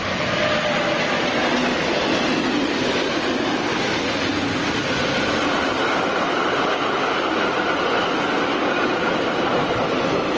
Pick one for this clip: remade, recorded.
recorded